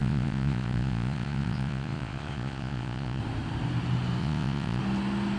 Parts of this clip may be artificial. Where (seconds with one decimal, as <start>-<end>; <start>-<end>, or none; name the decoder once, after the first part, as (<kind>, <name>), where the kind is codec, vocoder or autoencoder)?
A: 0.0-3.2 (vocoder, Vocos); 4.2-4.8